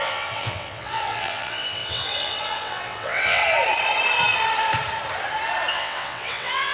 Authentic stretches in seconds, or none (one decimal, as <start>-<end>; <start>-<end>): 3.4-5.7